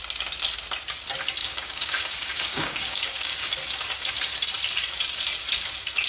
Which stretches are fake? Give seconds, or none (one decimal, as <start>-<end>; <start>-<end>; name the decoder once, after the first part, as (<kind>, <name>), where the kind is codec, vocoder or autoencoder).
1.4-3.5 (codec, DAC)